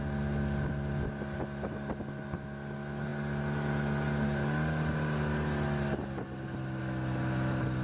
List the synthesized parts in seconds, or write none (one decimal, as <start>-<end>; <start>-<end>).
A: none